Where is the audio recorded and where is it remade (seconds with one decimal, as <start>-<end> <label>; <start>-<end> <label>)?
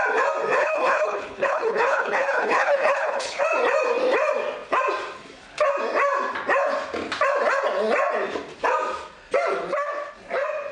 0.0-0.6 recorded; 0.6-3.4 remade; 3.4-10.7 recorded